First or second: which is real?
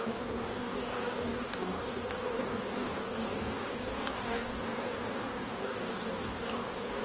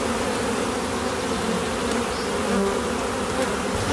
second